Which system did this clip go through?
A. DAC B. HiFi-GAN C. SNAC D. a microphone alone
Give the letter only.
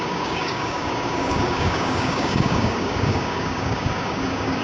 A